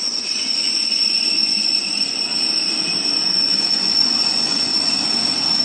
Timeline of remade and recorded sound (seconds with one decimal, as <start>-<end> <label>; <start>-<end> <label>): 0.0-2.3 remade; 2.3-3.1 recorded; 3.1-4.7 remade; 4.7-5.6 recorded